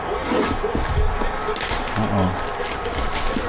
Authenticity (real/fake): real